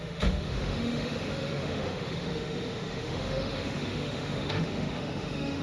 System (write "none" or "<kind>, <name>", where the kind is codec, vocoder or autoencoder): autoencoder, DAC-VAE